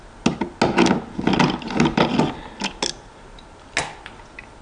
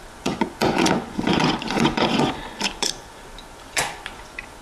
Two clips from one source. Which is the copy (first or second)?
second